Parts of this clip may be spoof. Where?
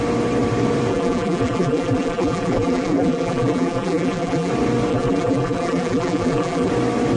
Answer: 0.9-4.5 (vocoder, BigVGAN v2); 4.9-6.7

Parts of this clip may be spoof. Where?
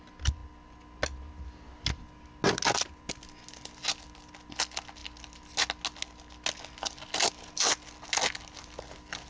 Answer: none